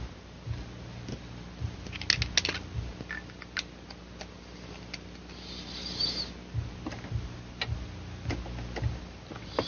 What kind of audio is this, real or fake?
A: real